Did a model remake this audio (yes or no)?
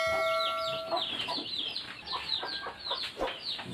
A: no